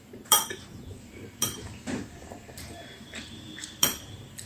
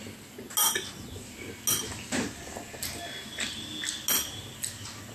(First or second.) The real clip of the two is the second